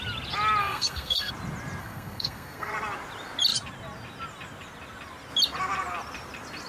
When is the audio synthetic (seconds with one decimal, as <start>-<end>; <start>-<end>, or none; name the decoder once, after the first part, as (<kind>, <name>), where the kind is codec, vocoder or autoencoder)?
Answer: 0.6-1.3 (codec, SNAC); 1.8-2.7

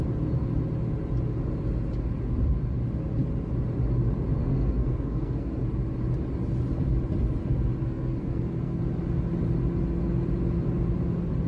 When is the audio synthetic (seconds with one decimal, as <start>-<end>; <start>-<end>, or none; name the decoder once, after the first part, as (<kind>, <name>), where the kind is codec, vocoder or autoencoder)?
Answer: 4.4-5.6 (codec, SNAC); 7.8-8.8